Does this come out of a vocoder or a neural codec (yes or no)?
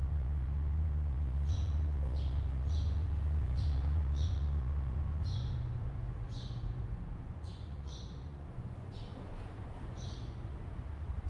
yes